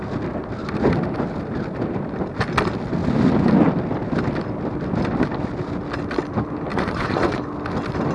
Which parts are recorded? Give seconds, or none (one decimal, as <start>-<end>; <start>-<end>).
0.0-6.7; 7.4-8.1